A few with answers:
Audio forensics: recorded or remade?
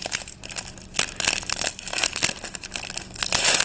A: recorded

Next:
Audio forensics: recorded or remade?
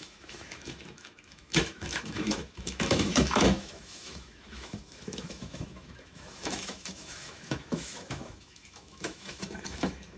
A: remade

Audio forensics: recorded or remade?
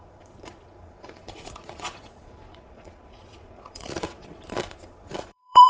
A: remade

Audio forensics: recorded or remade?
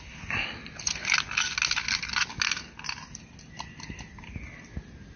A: recorded